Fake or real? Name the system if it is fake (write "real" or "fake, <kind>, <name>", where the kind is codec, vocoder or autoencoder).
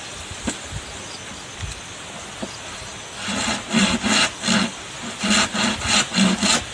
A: real